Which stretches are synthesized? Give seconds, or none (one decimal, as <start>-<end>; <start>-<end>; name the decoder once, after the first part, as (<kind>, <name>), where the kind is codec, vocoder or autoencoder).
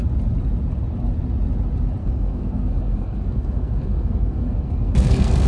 2.0-5.5 (codec, SNAC)